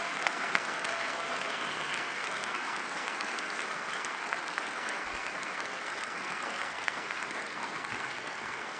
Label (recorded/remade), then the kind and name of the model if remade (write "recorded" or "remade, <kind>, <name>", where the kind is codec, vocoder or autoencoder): remade, codec, SNAC